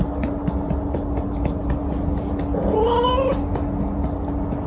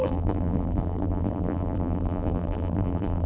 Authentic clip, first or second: first